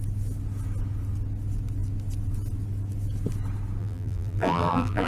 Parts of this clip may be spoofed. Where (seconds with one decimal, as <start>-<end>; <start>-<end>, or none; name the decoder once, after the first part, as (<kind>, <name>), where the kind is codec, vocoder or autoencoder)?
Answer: 3.8-5.1 (vocoder, BigVGAN v2)